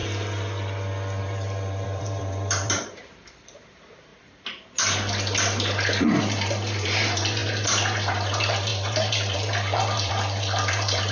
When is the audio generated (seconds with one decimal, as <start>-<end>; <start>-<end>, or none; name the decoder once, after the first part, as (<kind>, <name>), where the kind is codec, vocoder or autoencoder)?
1.2-4.1 (vocoder, BigVGAN v2); 6.2-11.1